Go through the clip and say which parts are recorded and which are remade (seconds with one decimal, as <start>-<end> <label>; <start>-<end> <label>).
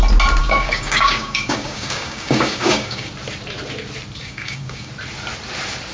0.0-0.4 recorded; 0.4-3.1 remade; 3.1-4.2 recorded; 4.2-4.9 remade; 4.9-5.9 recorded